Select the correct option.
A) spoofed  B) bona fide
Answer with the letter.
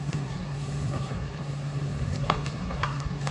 A